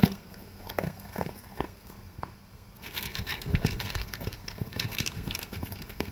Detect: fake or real fake